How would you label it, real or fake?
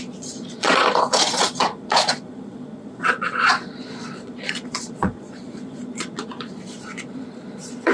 fake